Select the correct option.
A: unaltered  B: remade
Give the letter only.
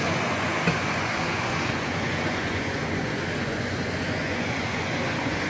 B